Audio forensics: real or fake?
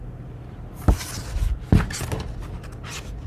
real